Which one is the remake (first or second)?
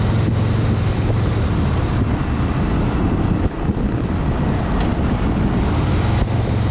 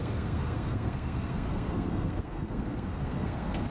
second